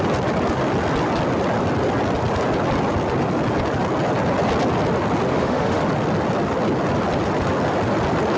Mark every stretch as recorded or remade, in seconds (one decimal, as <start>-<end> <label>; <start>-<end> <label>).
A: 0.0-5.3 recorded; 5.3-5.8 remade; 5.8-8.4 recorded